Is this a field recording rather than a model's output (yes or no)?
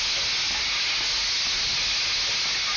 yes